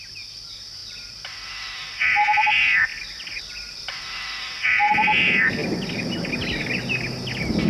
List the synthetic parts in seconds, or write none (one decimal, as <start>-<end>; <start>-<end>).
none